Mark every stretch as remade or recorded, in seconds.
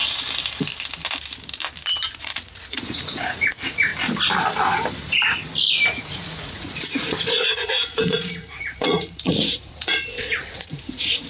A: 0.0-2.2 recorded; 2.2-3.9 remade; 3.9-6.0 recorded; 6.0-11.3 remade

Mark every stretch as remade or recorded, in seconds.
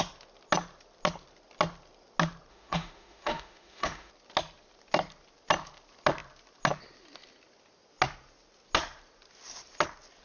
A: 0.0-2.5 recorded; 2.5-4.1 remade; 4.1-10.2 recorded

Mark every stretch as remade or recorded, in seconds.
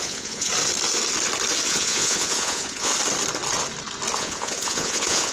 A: 0.0-0.5 remade; 0.5-1.7 recorded; 1.7-2.9 remade; 2.9-4.2 recorded; 4.2-5.3 remade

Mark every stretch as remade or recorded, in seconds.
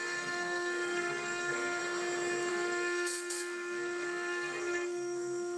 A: 0.0-1.8 remade; 1.8-2.5 recorded; 2.5-5.6 remade